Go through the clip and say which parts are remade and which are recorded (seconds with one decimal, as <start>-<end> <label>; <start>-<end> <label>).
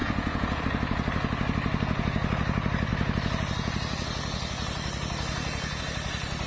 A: 0.0-0.6 remade; 0.6-6.5 recorded